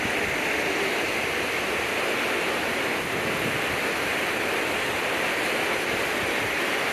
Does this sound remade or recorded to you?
recorded